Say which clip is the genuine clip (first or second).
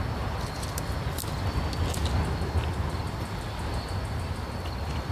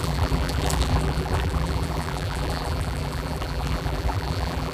first